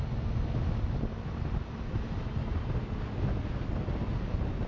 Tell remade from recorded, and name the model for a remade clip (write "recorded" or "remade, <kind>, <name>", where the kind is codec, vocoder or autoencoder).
recorded